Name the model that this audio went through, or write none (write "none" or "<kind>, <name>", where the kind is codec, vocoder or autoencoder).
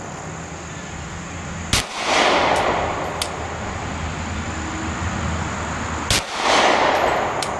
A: none